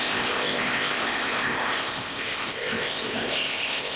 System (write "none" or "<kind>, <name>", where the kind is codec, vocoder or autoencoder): codec, ZipCodec